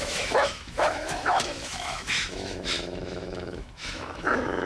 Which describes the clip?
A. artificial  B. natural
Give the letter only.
A